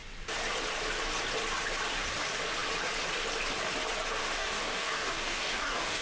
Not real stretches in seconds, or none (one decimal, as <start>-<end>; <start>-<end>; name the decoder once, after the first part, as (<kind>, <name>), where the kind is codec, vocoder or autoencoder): 4.2-6.0 (codec, DAC)